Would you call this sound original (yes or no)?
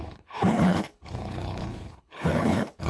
no